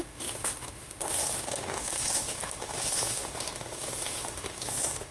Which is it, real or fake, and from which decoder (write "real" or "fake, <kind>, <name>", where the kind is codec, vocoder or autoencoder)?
fake, autoencoder, DAC-VAE